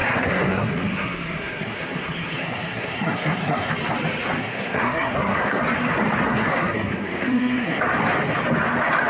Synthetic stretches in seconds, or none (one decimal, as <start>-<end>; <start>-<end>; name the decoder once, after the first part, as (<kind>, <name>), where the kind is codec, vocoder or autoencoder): 0.0-3.7 (codec, SNAC); 4.4-5.6; 6.3-7.8